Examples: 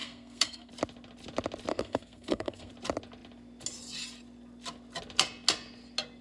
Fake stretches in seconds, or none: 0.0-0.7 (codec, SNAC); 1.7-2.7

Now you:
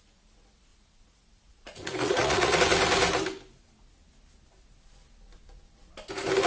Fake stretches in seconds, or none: 0.7-2.6 (vocoder, Vocos)

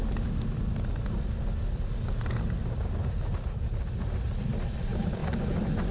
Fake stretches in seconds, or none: none

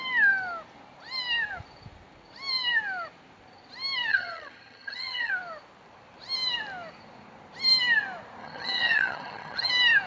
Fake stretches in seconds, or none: 4.1-5.3 (vocoder, HiFi-GAN); 8.4-9.7

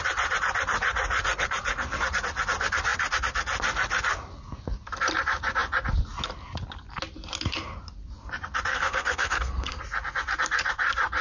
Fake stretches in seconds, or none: 8.7-9.8 (codec, SNAC)